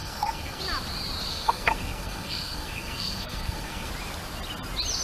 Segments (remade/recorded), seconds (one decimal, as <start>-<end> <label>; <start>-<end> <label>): 0.0-0.6 remade; 0.6-1.3 recorded; 1.3-3.9 remade; 3.9-5.0 recorded